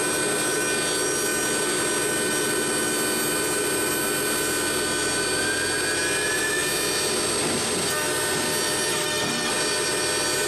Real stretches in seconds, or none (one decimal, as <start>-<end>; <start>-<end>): 0.0-8.9; 9.5-10.5